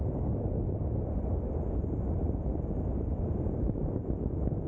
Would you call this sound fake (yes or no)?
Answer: no